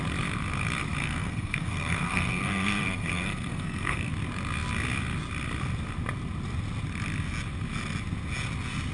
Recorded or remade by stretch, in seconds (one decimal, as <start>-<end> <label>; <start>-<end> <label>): 0.0-1.0 recorded; 1.0-4.1 remade; 4.1-8.9 recorded